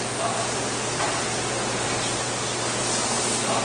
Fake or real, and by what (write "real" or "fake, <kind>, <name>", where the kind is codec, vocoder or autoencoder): real